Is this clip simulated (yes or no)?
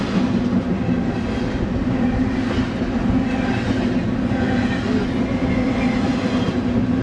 no